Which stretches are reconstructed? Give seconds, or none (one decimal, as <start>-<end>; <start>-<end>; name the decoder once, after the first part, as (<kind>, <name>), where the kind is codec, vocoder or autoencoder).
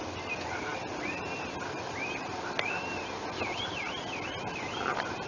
none